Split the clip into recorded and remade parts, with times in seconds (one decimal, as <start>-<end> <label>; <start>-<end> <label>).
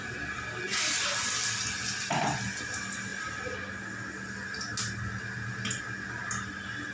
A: 0.0-6.9 recorded